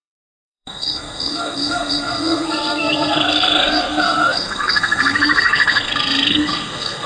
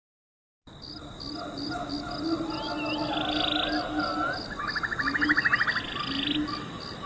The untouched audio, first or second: second